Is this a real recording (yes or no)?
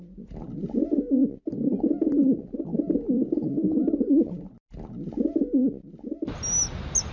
yes